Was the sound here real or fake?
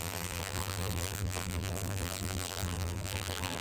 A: fake